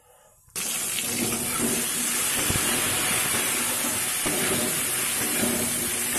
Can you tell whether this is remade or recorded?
recorded